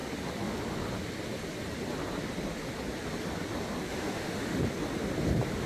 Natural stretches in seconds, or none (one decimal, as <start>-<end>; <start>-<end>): 0.0-3.9; 4.6-5.7